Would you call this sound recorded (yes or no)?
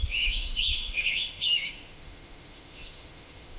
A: no